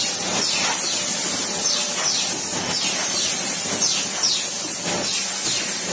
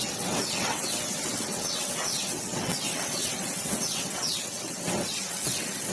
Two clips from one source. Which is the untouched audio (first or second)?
first